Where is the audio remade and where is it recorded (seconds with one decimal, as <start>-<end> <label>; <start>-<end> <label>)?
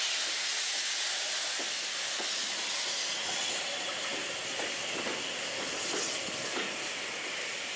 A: 0.0-7.8 recorded